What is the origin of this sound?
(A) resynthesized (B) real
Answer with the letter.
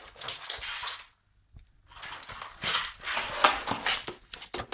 B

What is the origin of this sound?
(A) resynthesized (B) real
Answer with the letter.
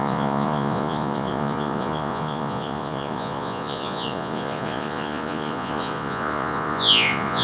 A